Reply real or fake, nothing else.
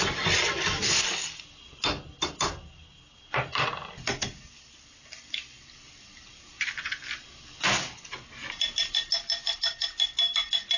real